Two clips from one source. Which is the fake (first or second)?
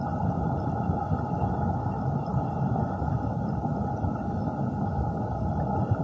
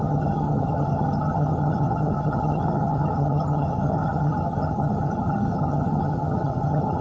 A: second